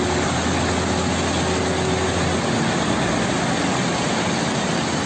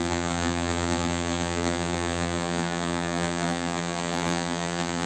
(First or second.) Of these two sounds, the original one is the first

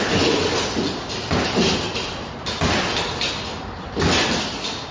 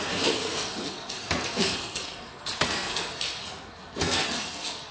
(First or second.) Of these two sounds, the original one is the first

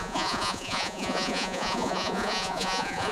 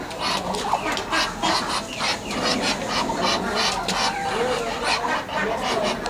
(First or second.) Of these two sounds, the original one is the second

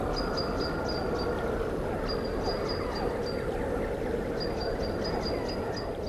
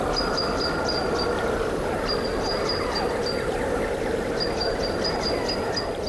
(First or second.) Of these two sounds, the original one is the first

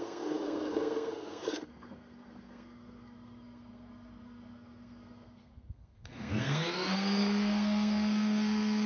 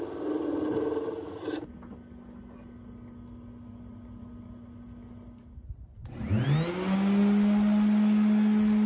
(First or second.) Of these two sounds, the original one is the second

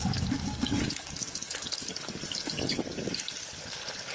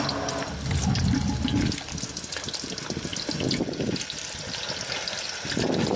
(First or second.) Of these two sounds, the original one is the second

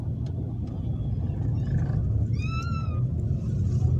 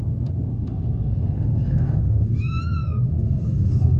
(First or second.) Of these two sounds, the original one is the first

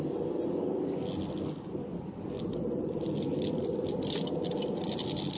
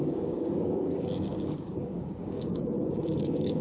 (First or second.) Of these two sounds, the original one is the first